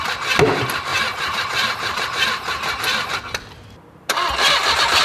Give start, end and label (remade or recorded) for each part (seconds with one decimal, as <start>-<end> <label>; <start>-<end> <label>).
0.0-0.9 recorded; 0.9-3.1 remade; 3.1-5.0 recorded